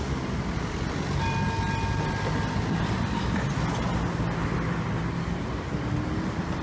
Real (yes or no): yes